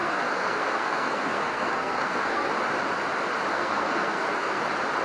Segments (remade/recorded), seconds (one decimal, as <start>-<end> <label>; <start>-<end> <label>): 0.0-2.5 remade; 2.5-3.5 recorded; 3.5-4.6 remade; 4.6-5.0 recorded